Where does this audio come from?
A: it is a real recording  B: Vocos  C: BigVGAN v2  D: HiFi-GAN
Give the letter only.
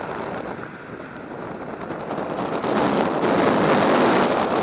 A